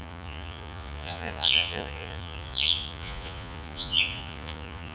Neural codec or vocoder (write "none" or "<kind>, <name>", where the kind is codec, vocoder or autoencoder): vocoder, Vocos